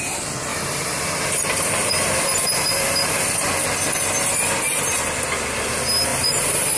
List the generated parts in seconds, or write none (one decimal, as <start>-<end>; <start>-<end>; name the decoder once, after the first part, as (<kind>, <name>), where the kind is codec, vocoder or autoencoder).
0.5-3.5 (vocoder, BigVGAN v2); 6.1-6.8